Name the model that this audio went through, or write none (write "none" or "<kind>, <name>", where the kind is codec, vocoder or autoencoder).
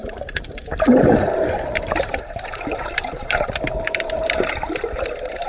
vocoder, BigVGAN v2